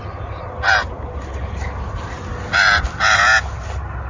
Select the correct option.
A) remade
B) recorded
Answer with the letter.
B